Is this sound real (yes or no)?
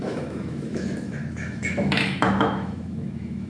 no